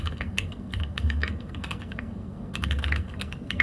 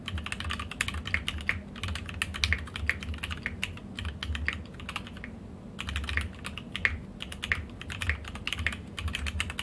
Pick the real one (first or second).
second